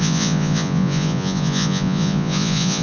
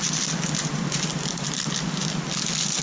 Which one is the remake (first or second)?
first